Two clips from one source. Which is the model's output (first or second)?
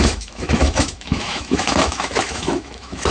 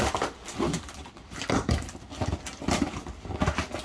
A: first